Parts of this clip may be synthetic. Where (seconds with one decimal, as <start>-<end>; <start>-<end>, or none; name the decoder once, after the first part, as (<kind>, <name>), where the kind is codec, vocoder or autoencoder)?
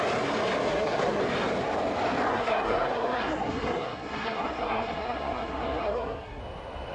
0.7-1.2 (codec, SNAC); 2.3-6.4